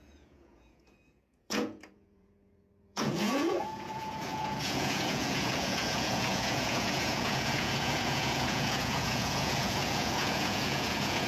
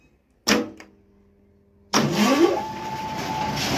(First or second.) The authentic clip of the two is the second